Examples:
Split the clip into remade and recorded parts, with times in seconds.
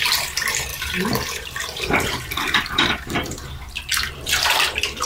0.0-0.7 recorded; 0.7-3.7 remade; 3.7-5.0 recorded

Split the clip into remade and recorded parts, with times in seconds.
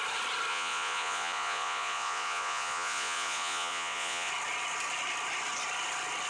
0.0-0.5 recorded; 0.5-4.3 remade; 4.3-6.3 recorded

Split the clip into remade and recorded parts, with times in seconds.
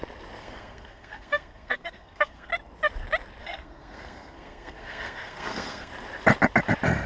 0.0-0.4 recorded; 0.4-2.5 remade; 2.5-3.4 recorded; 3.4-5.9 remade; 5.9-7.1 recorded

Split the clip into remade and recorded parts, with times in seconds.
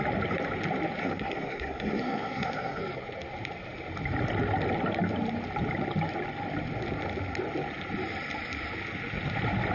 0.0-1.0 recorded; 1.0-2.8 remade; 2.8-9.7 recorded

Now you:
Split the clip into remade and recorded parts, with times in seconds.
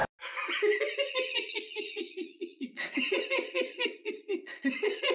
0.0-1.1 recorded; 1.1-5.1 remade